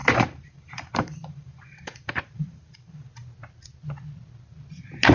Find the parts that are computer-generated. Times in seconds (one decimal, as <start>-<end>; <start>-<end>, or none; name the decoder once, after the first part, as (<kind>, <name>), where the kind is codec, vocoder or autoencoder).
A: 0.0-3.1 (vocoder, BigVGAN v2)